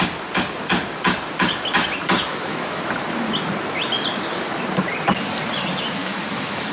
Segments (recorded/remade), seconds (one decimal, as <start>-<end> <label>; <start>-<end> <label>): 0.0-2.3 recorded; 2.3-2.9 remade; 2.9-6.0 recorded; 6.0-6.7 remade